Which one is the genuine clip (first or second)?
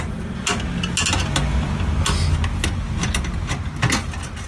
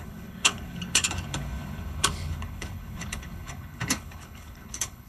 first